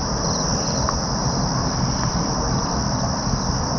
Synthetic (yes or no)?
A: no